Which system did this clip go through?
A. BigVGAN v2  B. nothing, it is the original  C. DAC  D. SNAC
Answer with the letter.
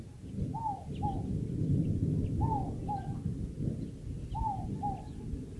B